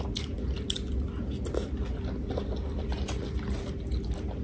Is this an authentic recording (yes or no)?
yes